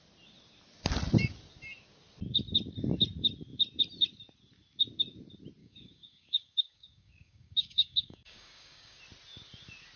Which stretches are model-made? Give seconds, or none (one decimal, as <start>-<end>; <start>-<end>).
5.6-9.0